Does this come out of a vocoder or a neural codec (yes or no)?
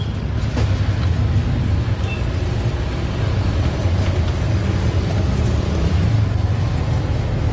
no